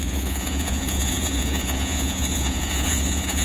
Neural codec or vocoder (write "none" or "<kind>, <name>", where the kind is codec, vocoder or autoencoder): vocoder, Vocos